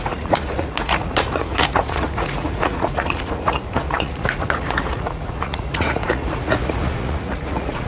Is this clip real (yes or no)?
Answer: no